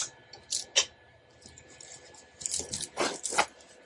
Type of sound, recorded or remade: recorded